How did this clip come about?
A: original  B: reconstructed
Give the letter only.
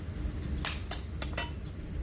A